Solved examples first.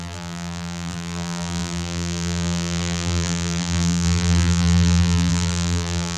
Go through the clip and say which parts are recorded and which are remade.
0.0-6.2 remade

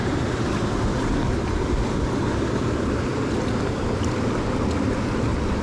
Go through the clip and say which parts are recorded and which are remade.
0.0-3.1 remade; 3.1-5.6 recorded

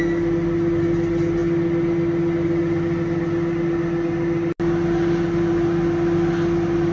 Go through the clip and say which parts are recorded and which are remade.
0.0-6.9 recorded

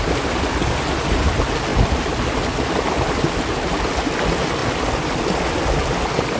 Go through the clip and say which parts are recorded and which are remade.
0.0-4.6 recorded; 4.6-5.2 remade; 5.2-6.4 recorded

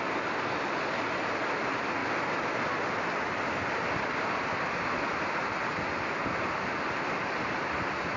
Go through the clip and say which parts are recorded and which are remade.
0.0-6.3 recorded; 6.3-7.2 remade; 7.2-8.2 recorded